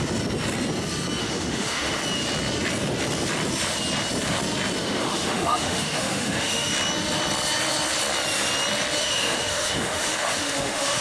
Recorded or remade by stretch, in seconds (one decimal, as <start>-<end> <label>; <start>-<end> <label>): 0.0-1.2 recorded; 1.2-2.0 remade; 2.0-4.8 recorded; 4.8-6.7 remade; 6.7-9.0 recorded; 9.0-11.0 remade